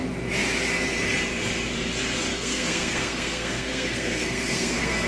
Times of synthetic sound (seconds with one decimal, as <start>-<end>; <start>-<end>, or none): 2.3-5.1